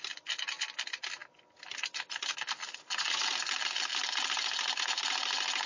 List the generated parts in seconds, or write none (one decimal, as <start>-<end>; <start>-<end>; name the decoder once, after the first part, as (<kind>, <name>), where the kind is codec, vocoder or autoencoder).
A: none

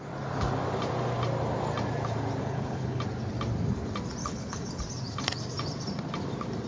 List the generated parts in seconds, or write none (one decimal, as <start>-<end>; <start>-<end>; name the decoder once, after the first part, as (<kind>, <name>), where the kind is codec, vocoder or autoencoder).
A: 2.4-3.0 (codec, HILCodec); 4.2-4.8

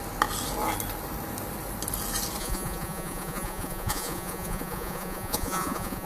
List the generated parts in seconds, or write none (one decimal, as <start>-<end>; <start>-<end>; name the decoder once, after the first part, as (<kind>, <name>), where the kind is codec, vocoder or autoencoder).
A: 2.4-6.1 (vocoder, Vocos)

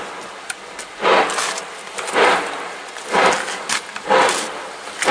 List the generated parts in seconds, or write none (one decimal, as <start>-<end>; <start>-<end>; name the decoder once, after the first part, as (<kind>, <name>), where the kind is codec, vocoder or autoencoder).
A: none

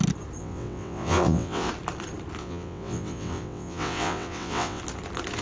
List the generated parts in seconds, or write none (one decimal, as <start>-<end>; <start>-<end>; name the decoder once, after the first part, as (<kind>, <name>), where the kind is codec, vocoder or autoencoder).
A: 0.4-1.7 (vocoder, WaveNeXt); 2.4-4.8